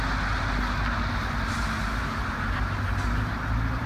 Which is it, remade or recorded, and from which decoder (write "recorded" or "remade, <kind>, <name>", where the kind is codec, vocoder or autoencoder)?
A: recorded